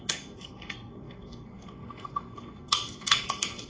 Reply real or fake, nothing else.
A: fake